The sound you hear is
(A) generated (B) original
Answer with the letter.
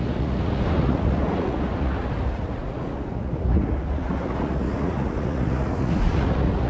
A